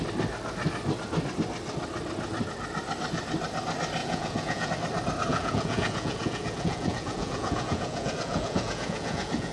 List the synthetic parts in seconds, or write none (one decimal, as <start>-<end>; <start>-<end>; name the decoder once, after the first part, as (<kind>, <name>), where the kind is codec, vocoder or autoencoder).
4.0-4.7 (vocoder, Vocos); 5.3-9.5